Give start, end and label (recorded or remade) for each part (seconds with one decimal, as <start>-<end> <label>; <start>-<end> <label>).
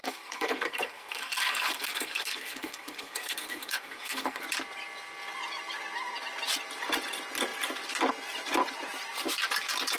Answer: 0.0-4.4 remade; 4.4-10.0 recorded